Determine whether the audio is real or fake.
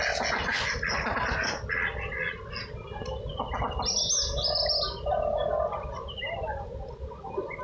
real